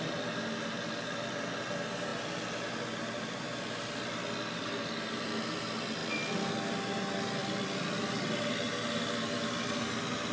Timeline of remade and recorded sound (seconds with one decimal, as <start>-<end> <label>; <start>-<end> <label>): 0.0-6.0 recorded; 6.0-6.5 remade; 6.5-7.4 recorded; 7.4-8.0 remade; 8.0-10.3 recorded